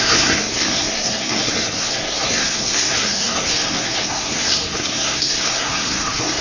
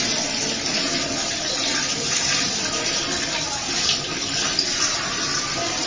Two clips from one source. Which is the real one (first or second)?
second